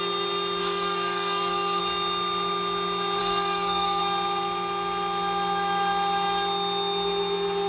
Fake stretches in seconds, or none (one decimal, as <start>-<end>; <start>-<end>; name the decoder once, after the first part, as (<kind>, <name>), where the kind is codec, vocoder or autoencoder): 0.6-1.8 (codec, DAC); 3.2-4.0